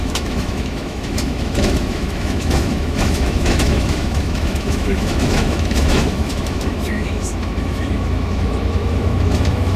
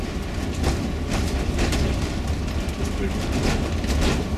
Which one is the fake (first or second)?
first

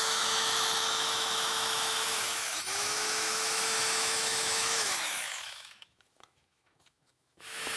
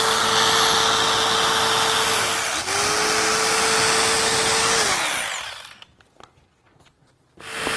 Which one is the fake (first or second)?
first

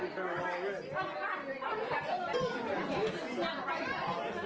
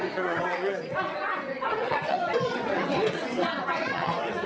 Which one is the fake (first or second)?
second